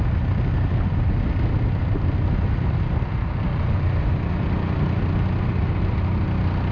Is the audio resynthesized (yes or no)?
no